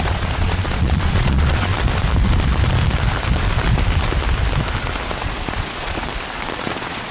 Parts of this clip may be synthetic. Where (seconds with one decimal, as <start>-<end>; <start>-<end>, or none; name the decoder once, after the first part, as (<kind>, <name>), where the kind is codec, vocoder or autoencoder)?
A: 0.0-1.7 (vocoder, Vocos); 5.2-6.1; 6.6-7.1